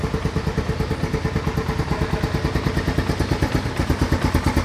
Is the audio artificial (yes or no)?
no